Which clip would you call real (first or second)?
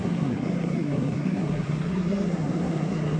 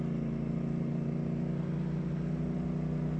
second